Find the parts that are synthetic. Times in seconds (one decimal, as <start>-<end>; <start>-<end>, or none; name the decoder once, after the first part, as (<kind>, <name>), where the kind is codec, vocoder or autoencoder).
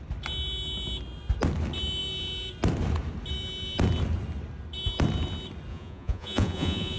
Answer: 5.7-7.0 (vocoder, Vocos)